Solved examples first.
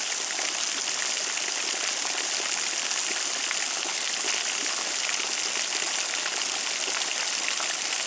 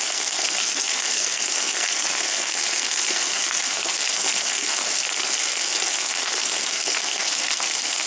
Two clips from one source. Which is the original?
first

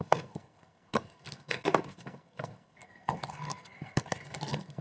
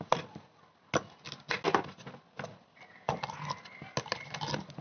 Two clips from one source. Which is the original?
second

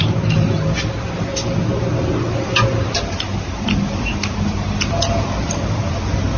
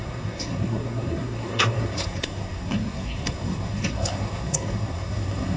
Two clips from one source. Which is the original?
first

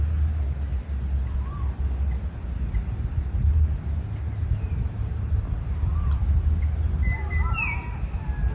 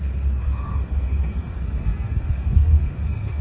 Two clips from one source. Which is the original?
first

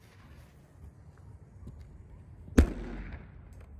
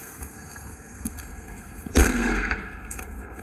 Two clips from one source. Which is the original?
first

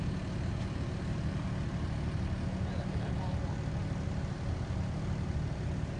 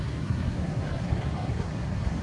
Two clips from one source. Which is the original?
first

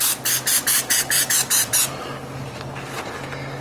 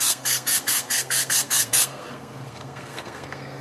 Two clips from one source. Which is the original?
first